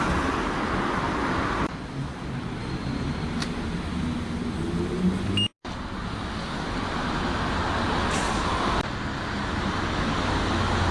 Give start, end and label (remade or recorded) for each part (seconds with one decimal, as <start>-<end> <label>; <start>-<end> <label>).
0.0-10.9 recorded